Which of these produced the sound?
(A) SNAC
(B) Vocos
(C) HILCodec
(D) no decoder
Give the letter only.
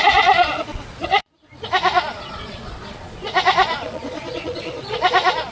B